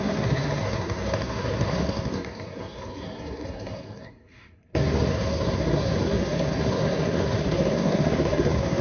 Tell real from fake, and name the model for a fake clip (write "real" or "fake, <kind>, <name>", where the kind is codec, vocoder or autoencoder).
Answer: fake, codec, SNAC